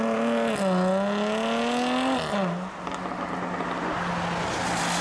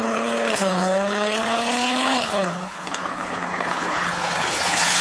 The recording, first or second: first